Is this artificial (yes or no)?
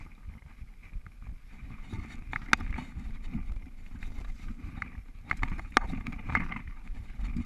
no